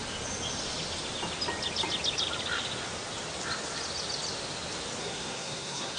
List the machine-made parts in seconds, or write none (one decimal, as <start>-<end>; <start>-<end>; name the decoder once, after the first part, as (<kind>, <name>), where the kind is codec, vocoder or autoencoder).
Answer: 5.0-6.0 (codec, SNAC)